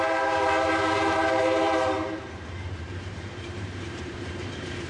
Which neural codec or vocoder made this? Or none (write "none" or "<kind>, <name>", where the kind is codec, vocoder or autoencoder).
vocoder, BigVGAN v2